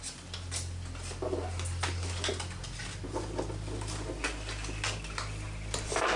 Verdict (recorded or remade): recorded